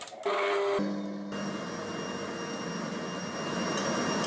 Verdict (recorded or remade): recorded